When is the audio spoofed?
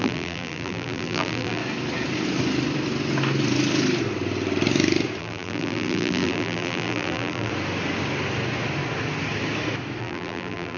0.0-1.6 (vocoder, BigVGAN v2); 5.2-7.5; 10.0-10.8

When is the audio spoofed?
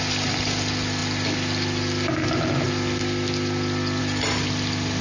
none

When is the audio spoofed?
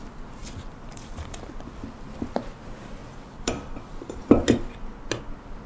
0.4-1.5 (vocoder, BigVGAN v2); 3.0-4.2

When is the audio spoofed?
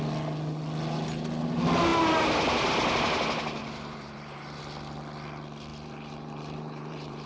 3.6-4.6 (vocoder, BigVGAN v2); 5.7-7.3